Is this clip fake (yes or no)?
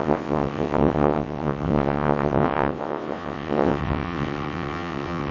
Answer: yes